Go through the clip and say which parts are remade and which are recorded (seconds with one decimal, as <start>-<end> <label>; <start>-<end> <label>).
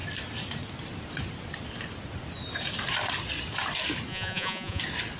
0.0-4.1 recorded; 4.1-4.8 remade; 4.8-5.2 recorded